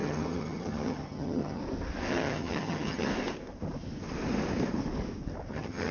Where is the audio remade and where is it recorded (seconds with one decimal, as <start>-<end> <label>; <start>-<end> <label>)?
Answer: 0.0-1.6 remade; 1.6-2.1 recorded; 2.1-3.1 remade; 3.1-5.5 recorded; 5.5-5.9 remade